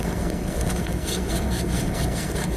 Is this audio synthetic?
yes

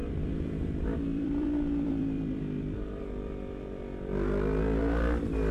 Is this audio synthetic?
yes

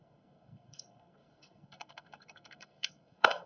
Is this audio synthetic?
yes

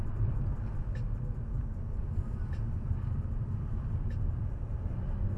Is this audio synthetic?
no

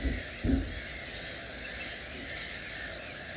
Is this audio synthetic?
no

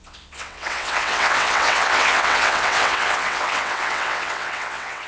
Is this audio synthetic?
yes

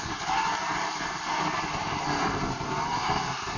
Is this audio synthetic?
yes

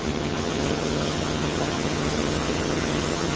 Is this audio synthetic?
yes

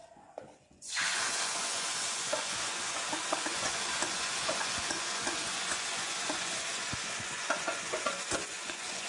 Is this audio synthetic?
yes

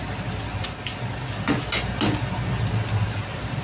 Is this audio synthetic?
no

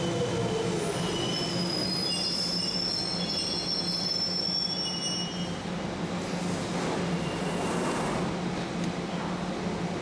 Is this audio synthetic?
no